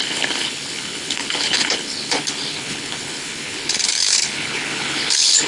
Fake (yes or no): yes